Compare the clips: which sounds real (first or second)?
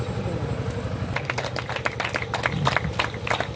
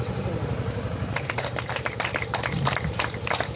first